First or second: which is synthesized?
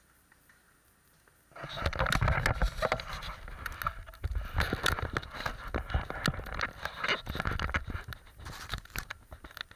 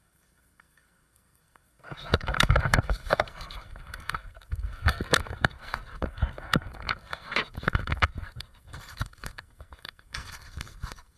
second